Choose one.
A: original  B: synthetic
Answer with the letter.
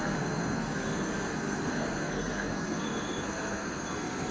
B